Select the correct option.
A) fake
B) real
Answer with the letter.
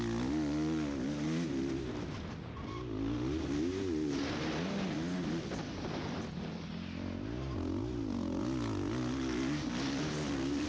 B